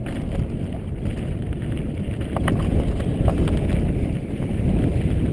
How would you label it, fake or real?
fake